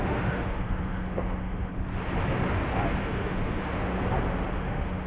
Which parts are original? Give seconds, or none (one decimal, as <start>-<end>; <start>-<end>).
1.7-3.0; 3.9-4.5